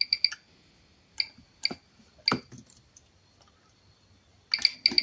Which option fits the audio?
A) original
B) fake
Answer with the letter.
A